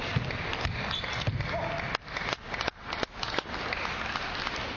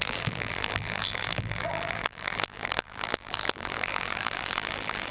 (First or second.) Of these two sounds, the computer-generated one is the second